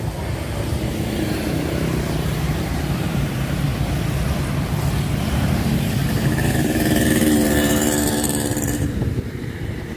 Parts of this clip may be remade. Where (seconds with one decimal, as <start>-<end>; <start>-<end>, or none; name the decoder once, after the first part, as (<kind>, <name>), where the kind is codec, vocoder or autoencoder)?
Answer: 0.0-3.7 (vocoder, BigVGAN v2); 5.3-6.0; 6.5-10.0